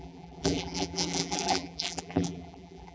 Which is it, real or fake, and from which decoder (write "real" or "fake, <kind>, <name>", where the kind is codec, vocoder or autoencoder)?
fake, vocoder, BigVGAN v2